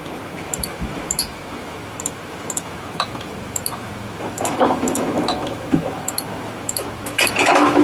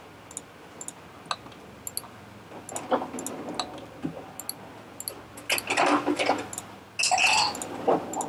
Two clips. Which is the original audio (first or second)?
second